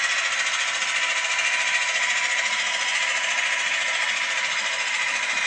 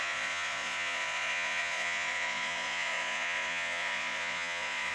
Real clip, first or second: first